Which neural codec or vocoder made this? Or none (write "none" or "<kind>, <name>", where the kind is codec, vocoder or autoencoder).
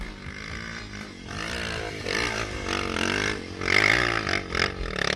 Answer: none